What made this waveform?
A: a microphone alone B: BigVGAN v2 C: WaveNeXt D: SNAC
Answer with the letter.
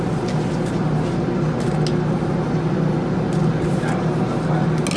A